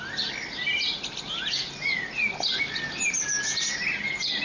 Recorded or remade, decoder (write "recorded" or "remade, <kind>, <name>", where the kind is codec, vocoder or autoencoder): recorded